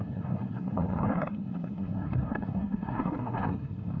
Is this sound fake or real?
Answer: fake